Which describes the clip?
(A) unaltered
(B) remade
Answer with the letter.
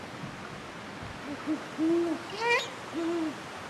A